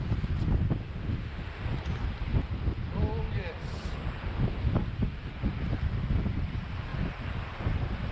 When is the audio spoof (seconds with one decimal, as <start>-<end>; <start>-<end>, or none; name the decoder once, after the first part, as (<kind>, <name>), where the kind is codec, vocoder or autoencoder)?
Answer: 0.8-1.6 (autoencoder, DAC-VAE)